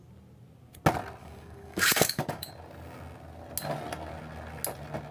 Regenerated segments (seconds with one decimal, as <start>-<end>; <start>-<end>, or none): 1.2-2.5